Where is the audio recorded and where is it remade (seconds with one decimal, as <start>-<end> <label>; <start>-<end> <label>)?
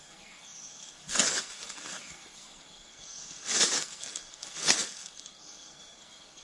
0.0-6.4 remade